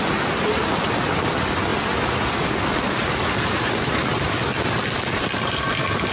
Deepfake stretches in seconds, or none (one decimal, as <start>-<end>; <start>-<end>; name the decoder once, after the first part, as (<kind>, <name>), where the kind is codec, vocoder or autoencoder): none